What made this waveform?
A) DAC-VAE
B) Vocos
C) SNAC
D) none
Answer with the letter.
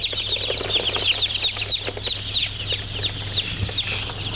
D